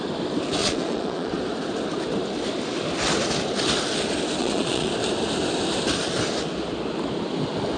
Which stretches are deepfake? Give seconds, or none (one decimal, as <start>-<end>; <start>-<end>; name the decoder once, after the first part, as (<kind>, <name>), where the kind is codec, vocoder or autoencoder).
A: 0.6-1.3 (vocoder, Vocos); 4.4-4.9